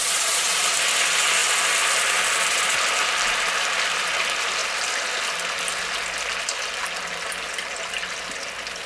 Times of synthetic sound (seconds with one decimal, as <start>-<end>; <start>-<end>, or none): 0.0-0.6